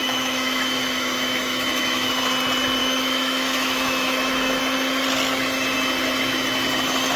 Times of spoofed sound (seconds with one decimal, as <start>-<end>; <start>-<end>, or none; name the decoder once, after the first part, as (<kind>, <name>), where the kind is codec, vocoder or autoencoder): 0.0-2.2 (autoencoder, DAC-VAE); 2.8-4.6